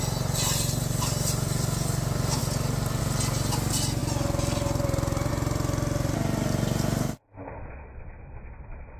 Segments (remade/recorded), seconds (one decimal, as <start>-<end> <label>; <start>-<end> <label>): 0.0-9.0 recorded